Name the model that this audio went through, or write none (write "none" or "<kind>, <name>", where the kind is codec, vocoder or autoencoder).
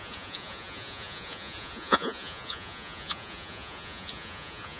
vocoder, Vocos